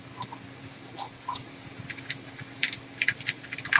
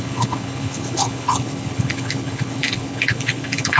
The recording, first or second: first